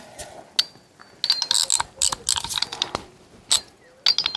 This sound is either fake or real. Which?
real